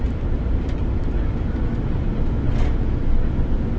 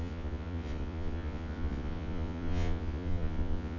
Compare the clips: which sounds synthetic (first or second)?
second